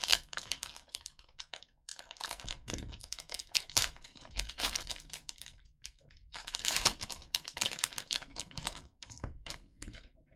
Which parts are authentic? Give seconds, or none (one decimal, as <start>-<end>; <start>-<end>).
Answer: none